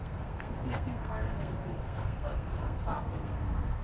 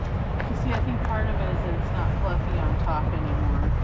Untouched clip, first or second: second